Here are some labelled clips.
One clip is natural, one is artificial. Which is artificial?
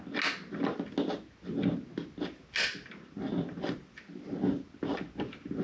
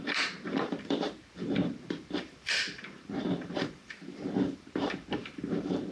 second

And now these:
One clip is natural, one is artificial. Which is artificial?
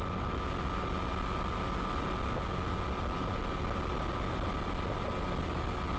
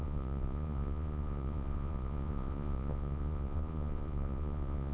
second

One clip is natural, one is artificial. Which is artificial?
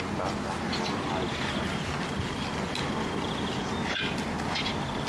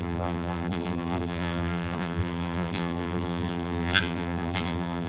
second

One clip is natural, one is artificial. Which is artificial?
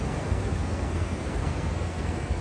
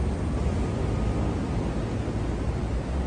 first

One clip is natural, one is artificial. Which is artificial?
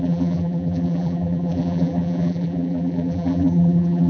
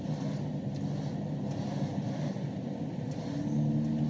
first